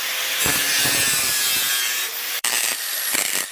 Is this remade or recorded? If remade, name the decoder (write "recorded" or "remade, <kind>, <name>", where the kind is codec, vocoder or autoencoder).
remade, vocoder, BigVGAN v2